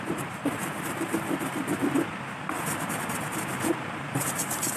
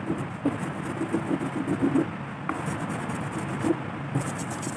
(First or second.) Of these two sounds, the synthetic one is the first